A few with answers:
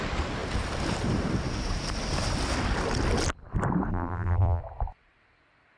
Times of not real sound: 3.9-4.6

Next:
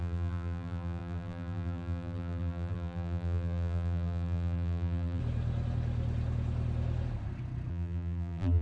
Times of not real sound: 0.0-5.2; 7.7-8.6

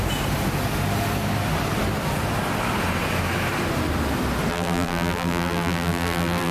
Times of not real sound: 4.5-6.5

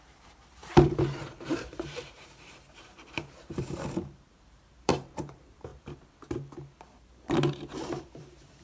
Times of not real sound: 0.0-0.6; 1.6-5.7; 6.8-8.6